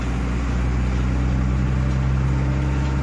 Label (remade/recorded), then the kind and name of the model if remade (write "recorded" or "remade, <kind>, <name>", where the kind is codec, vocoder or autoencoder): recorded